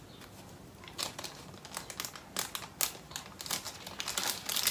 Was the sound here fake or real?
real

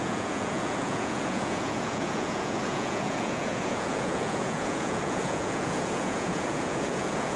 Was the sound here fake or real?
fake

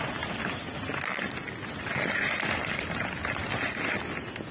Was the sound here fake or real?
real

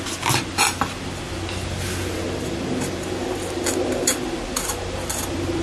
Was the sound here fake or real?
real